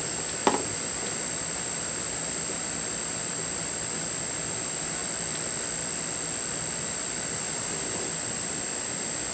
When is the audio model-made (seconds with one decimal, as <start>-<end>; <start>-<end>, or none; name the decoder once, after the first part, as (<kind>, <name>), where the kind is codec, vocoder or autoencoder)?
none